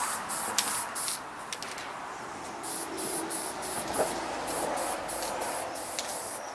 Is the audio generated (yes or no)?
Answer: no